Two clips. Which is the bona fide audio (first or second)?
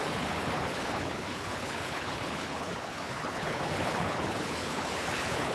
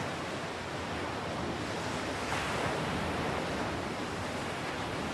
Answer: second